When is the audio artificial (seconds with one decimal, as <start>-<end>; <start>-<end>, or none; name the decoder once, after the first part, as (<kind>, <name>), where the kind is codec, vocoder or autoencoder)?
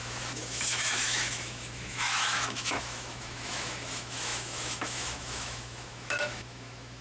0.0-7.0 (autoencoder, DAC-VAE)